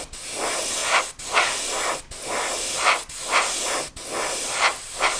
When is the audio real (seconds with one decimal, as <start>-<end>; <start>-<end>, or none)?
0.0-5.2

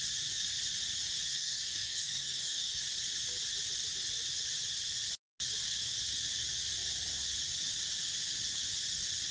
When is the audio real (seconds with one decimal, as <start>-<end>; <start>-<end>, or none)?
0.0-1.3; 2.8-9.3

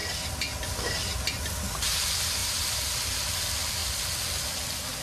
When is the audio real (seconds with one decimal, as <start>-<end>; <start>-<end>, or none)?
0.0-5.0

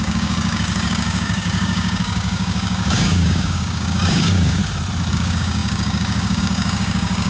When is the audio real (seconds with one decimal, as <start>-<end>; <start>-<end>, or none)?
4.6-5.1

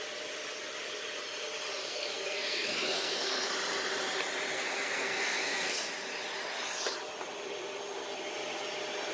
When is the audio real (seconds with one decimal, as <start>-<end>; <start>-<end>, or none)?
0.0-1.8; 3.5-4.5; 5.9-9.1